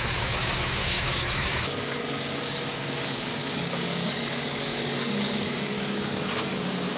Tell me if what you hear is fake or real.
fake